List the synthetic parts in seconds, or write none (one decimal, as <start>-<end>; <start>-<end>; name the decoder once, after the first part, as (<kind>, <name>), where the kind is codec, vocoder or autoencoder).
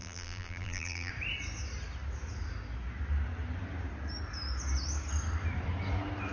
0.0-1.1 (vocoder, BigVGAN v2)